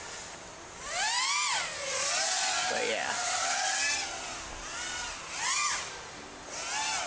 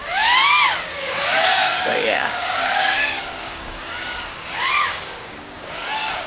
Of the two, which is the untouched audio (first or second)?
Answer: first